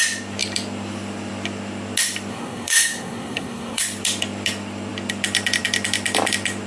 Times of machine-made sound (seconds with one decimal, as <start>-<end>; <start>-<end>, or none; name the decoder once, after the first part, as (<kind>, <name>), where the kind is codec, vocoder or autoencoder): 2.3-3.8 (codec, SNAC)